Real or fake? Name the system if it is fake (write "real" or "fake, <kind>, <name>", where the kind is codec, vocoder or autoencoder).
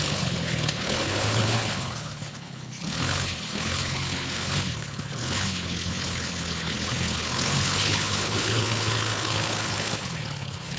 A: fake, codec, HILCodec